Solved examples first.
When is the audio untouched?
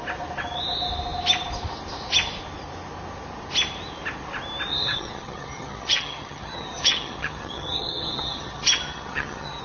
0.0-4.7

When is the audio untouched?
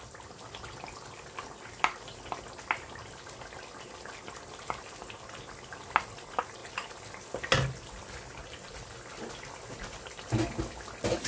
0.0-11.3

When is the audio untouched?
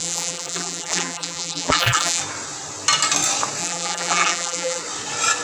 2.2-3.6; 4.8-5.4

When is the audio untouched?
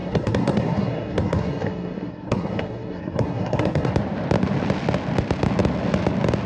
3.9-6.5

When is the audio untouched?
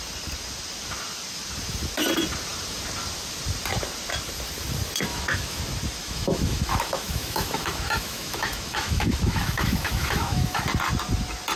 0.0-5.1; 5.6-6.0; 10.6-11.6